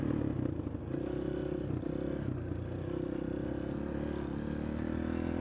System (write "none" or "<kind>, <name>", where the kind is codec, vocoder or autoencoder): none